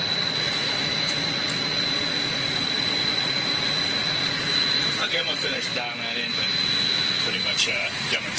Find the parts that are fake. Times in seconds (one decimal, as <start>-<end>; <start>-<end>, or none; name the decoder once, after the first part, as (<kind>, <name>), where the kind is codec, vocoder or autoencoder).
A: 0.0-5.7 (vocoder, Vocos); 7.2-8.4